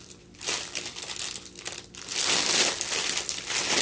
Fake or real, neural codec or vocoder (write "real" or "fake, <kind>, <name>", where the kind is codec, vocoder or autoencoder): real